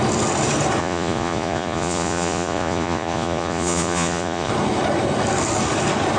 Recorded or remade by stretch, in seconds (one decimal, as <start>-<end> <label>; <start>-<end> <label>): 0.0-0.8 recorded; 0.8-4.5 remade; 4.5-6.2 recorded